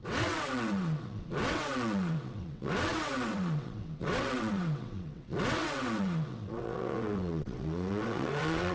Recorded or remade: remade